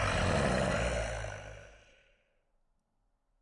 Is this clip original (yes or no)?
yes